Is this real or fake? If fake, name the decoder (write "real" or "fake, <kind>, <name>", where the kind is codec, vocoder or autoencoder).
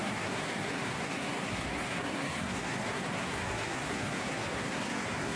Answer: fake, codec, SNAC